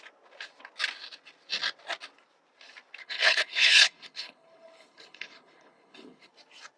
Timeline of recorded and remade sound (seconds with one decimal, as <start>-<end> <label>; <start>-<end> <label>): 0.0-3.0 recorded; 3.0-6.3 remade; 6.3-6.8 recorded